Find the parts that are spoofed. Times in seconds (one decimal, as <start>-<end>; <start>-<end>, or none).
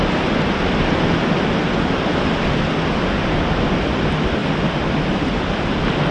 none